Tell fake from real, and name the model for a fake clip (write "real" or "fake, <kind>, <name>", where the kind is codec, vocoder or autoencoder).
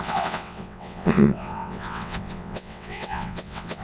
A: fake, vocoder, WaveNeXt